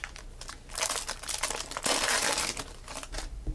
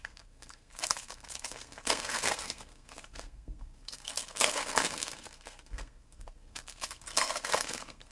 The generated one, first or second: second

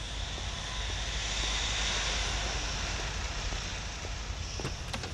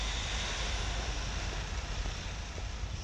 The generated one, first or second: second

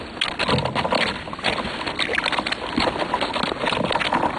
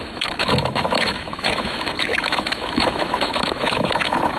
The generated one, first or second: second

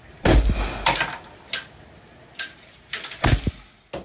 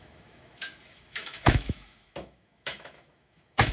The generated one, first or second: second